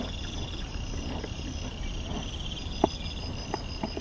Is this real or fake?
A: real